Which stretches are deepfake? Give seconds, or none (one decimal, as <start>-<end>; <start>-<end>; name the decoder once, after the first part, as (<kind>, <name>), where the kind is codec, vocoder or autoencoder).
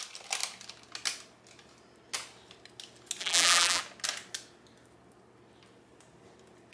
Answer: 3.2-3.8 (vocoder, BigVGAN v2)